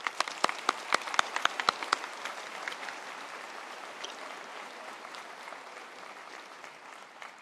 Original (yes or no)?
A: yes